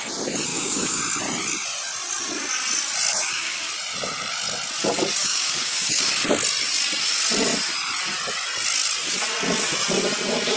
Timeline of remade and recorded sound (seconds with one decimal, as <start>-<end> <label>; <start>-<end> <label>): 0.0-0.5 recorded; 0.5-1.0 remade; 1.0-3.1 recorded; 3.1-3.7 remade; 3.7-5.2 recorded; 5.2-6.1 remade; 6.1-10.6 recorded